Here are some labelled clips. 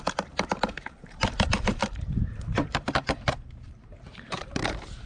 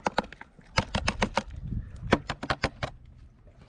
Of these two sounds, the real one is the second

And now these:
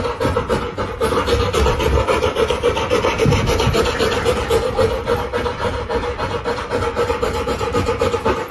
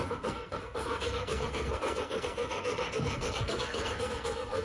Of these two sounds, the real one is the first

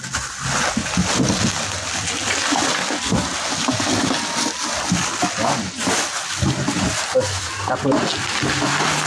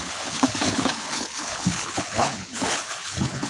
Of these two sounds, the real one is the first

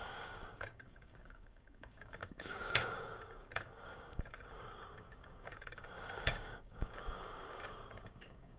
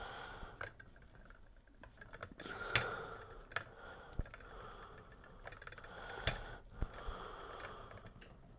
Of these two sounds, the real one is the second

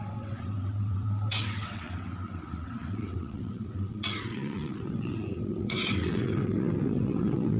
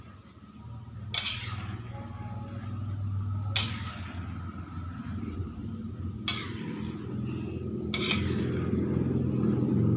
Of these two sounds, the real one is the second